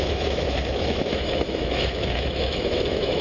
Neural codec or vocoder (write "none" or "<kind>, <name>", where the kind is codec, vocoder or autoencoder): autoencoder, DAC-VAE